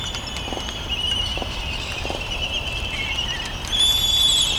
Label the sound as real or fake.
fake